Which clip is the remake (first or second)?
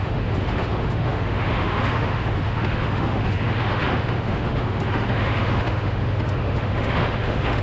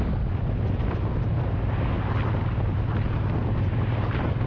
first